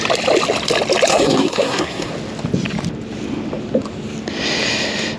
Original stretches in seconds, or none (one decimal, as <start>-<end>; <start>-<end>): 0.0-1.1; 2.1-5.2